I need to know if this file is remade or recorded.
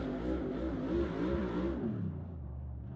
recorded